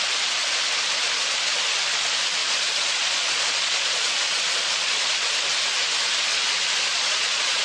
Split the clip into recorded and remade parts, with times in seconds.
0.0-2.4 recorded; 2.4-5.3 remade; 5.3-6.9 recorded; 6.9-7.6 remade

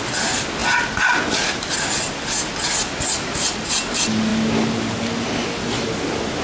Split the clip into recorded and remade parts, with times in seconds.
0.0-6.4 recorded

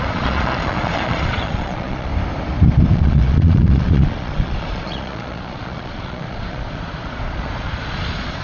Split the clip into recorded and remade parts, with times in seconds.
0.0-2.1 remade; 2.1-2.9 recorded; 2.9-8.4 remade

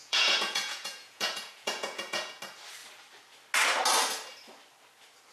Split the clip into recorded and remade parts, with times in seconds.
0.0-2.4 remade; 2.4-5.3 recorded